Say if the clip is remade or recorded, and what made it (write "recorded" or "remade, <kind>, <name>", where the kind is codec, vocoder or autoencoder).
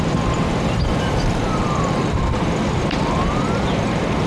remade, vocoder, BigVGAN v2